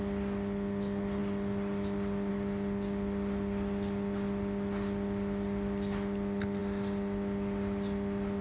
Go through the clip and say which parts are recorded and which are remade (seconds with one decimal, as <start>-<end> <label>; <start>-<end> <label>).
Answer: 0.0-8.4 recorded